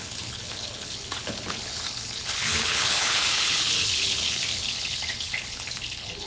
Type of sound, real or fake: fake